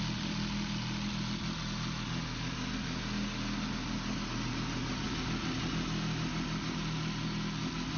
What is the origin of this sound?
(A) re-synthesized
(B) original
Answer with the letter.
B